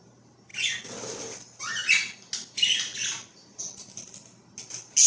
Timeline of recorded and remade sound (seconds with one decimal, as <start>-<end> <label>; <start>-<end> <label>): 0.0-5.1 recorded